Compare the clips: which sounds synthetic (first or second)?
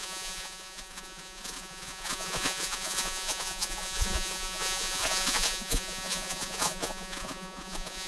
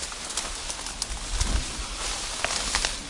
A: first